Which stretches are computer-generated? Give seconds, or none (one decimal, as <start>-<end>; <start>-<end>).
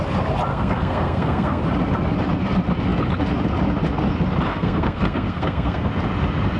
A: 0.5-1.6; 4.5-5.9